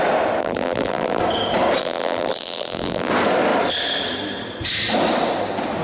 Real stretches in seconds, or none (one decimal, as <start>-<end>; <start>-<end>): 0.0-0.4; 1.2-1.8; 3.1-5.8